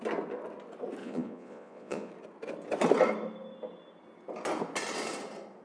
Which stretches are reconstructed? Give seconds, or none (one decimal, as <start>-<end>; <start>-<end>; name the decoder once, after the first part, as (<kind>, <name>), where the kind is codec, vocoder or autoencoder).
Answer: 1.0-2.1 (vocoder, Vocos)